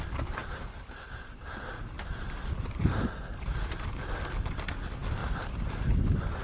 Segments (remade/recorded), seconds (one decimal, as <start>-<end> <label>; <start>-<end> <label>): 0.0-0.4 recorded; 0.4-4.2 remade; 4.2-5.2 recorded; 5.2-5.8 remade; 5.8-6.4 recorded

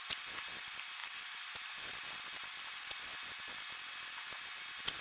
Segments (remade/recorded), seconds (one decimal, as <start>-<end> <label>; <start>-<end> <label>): 0.0-5.0 recorded

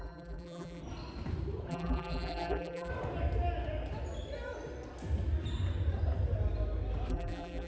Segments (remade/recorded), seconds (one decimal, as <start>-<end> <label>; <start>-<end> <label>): 0.0-0.8 remade; 0.8-1.7 recorded; 1.7-2.9 remade; 2.9-7.1 recorded; 7.1-7.7 remade